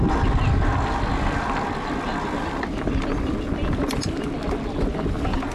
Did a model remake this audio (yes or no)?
no